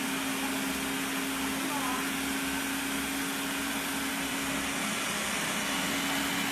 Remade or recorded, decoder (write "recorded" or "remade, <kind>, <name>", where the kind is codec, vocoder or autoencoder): recorded